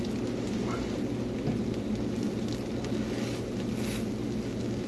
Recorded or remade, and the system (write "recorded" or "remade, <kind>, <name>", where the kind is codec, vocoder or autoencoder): recorded